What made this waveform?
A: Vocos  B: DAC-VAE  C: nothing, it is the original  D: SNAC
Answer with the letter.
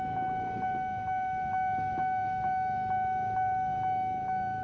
C